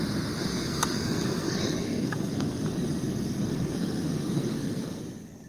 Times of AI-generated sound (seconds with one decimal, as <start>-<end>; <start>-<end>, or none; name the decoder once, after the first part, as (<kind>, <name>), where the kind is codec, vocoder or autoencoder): 0.5-2.6 (codec, SNAC); 3.5-5.0

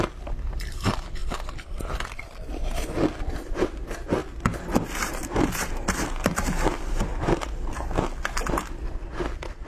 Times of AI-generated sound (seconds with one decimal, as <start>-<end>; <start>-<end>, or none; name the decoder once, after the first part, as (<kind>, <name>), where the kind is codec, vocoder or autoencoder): 0.0-4.2 (vocoder, BigVGAN v2); 5.0-7.1; 8.8-9.7

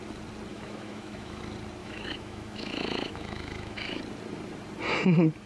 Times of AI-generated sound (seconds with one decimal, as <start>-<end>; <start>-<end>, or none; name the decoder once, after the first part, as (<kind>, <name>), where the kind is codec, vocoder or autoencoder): 0.5-1.4 (autoencoder, DAC-VAE); 1.8-4.0

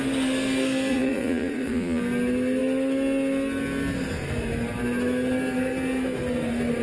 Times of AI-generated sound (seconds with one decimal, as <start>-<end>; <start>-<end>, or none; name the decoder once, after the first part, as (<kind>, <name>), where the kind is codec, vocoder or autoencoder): 0.9-2.0 (vocoder, Vocos)

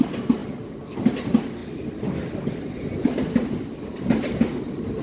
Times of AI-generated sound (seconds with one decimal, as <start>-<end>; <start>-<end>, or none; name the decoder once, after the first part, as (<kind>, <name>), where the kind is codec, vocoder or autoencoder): none

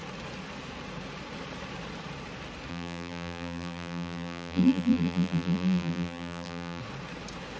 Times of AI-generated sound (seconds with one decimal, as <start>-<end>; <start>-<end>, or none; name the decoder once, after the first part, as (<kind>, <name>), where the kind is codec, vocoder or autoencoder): 2.7-6.8 (vocoder, BigVGAN v2)

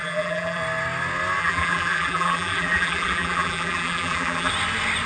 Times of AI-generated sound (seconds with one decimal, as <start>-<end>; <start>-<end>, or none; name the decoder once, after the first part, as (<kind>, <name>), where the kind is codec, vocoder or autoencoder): 0.0-0.6 (vocoder, BigVGAN v2); 1.4-4.5

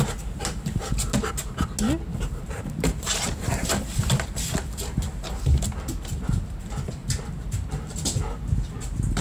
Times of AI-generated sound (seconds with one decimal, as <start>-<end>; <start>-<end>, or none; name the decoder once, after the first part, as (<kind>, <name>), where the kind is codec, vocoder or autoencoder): 2.1-3.7 (vocoder, BigVGAN v2)